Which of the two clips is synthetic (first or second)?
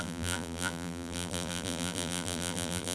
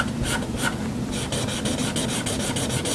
first